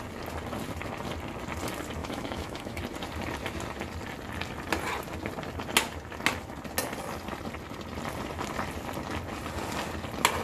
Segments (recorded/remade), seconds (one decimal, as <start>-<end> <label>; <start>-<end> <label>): 0.0-2.0 recorded; 2.0-2.8 remade; 2.8-10.4 recorded